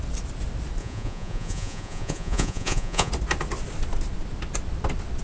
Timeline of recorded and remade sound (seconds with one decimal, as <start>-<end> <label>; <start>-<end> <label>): 0.0-0.8 recorded; 0.8-3.1 remade; 3.1-5.2 recorded